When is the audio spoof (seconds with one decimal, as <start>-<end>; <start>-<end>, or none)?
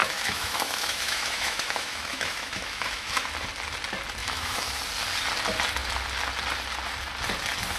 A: 0.0-3.2; 4.2-4.8